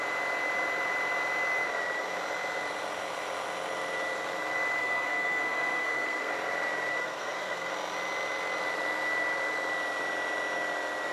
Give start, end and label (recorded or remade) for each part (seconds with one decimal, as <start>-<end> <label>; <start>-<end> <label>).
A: 0.0-4.8 recorded; 4.8-6.3 remade; 6.3-6.9 recorded; 6.9-7.7 remade; 7.7-11.1 recorded